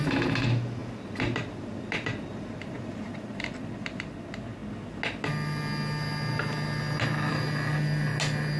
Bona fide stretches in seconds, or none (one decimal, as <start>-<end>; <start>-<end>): 0.0-0.8; 4.1-8.6